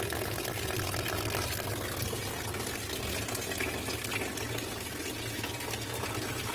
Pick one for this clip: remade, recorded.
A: recorded